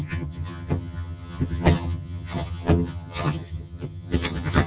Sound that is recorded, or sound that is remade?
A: remade